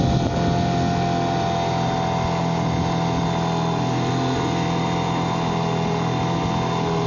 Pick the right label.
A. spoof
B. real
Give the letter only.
B